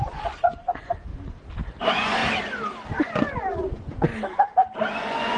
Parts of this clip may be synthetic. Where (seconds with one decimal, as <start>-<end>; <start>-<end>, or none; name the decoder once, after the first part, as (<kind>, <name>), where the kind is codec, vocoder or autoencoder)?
0.0-1.1 (vocoder, Vocos); 1.8-2.2; 2.9-4.1; 4.9-5.4